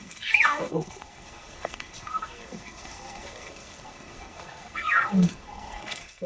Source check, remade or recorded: remade